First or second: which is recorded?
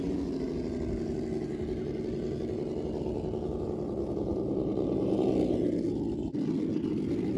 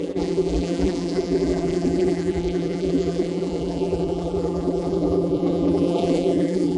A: first